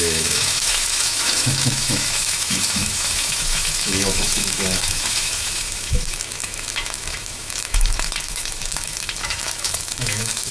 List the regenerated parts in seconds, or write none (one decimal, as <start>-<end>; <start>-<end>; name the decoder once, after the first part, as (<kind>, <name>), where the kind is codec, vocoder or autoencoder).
0.0-10.5 (autoencoder, DAC-VAE)